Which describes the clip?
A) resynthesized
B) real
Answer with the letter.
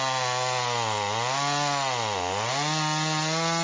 B